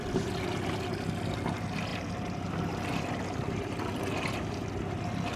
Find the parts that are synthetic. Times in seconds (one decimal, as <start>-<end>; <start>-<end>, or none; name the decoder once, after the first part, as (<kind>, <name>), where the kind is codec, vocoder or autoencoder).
none